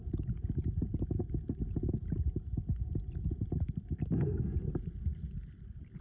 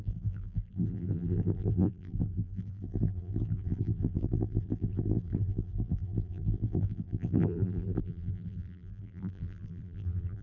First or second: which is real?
first